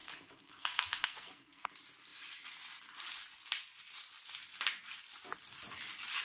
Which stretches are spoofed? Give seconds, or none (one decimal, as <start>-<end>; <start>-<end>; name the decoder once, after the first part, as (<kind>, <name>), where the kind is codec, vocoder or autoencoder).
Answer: 0.0-1.7 (codec, SNAC)